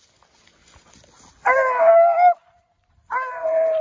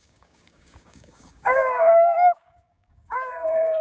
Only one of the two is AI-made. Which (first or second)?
second